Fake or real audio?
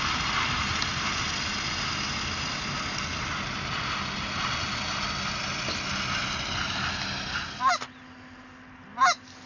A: real